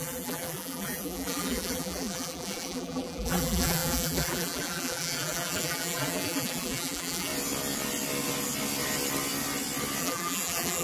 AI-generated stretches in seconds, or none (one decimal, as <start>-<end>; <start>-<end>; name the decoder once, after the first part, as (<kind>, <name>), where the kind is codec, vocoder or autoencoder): 0.0-7.3 (vocoder, BigVGAN v2); 10.0-10.8